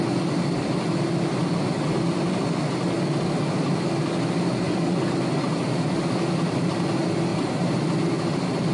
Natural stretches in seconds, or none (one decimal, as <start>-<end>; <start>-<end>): 0.0-8.7